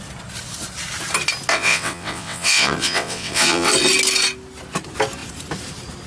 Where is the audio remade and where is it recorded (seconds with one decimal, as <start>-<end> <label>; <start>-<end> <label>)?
0.0-1.5 recorded; 1.5-3.7 remade; 3.7-6.1 recorded